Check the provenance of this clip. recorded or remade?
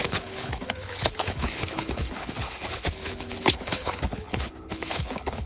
remade